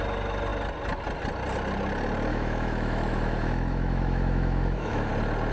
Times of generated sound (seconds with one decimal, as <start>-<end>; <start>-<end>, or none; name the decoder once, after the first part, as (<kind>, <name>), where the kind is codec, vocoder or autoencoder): 2.3-5.1 (autoencoder, DAC-VAE)